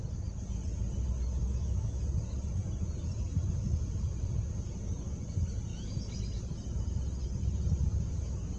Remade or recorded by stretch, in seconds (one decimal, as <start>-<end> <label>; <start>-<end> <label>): 0.0-1.4 recorded; 1.4-2.0 remade; 2.0-5.7 recorded; 5.7-6.2 remade; 6.2-8.6 recorded